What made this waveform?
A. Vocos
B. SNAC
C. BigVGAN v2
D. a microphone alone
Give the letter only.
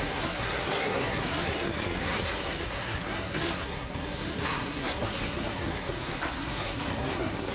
B